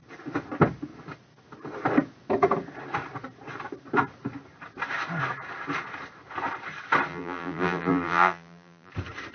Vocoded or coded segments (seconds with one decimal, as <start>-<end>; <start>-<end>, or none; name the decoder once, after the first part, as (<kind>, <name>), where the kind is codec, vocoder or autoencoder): 7.1-8.9 (vocoder, BigVGAN v2)